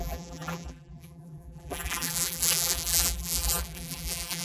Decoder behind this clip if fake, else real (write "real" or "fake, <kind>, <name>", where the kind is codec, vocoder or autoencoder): fake, vocoder, BigVGAN v2